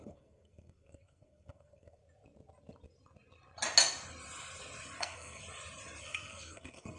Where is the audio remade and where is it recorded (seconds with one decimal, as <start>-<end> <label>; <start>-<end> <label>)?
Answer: 0.0-2.0 remade; 2.0-5.0 recorded; 5.0-5.4 remade; 5.4-6.0 recorded; 6.0-7.0 remade